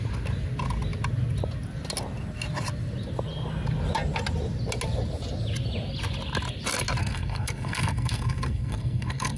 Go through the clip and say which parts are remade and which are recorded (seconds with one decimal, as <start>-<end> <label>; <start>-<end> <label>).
0.0-7.0 recorded; 7.0-9.4 remade